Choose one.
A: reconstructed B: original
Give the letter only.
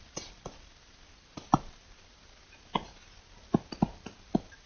B